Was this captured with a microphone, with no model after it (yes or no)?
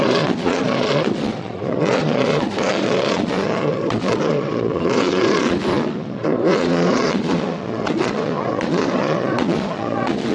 no